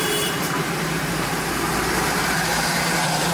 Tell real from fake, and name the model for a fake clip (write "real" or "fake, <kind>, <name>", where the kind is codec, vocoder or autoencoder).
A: fake, vocoder, BigVGAN v2